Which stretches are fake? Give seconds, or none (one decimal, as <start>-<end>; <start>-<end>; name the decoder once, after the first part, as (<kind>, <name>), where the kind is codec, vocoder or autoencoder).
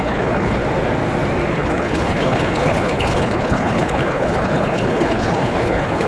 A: 0.0-0.6 (codec, HILCodec); 1.5-6.1